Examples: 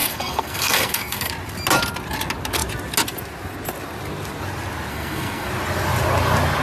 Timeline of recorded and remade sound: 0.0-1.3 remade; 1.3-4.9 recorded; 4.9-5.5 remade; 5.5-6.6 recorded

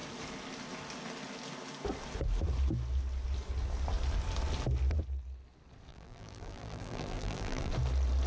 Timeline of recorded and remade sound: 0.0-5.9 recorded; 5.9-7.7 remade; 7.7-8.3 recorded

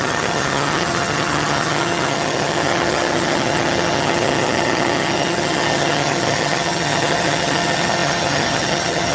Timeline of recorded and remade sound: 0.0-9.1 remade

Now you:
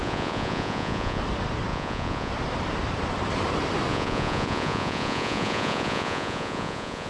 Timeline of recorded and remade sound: 0.0-1.2 remade; 1.2-1.7 recorded; 1.7-2.3 remade; 2.3-3.9 recorded; 3.9-7.1 remade

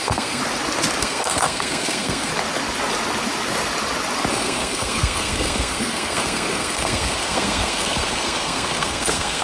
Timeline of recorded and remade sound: 0.0-0.4 remade; 0.4-1.0 recorded; 1.0-2.3 remade; 2.3-4.3 recorded; 4.3-9.4 remade

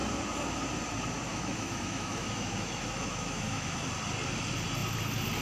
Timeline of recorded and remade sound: 0.0-1.3 recorded; 1.3-3.8 remade; 3.8-5.4 recorded

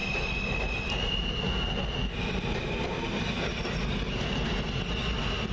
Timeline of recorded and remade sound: 0.0-5.5 recorded